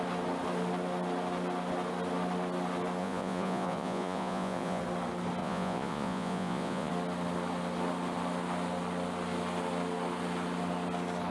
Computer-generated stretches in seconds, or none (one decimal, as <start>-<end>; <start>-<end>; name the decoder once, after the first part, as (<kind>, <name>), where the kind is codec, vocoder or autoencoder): 3.0-4.8 (vocoder, Vocos); 5.4-6.9